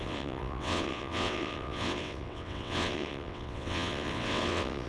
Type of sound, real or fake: fake